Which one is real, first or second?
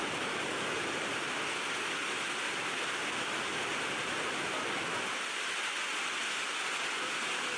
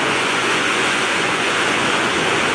first